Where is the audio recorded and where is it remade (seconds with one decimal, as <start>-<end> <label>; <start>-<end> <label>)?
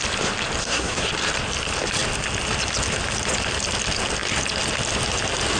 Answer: 0.0-0.6 recorded; 0.6-1.1 remade; 1.1-5.6 recorded